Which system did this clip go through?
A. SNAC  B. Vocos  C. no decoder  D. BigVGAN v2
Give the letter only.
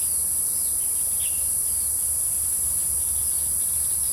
D